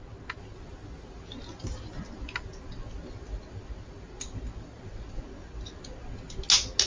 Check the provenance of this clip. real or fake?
real